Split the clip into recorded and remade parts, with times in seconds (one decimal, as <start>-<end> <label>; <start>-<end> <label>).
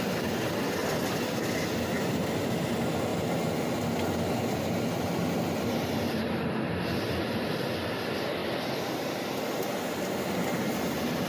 0.0-11.3 recorded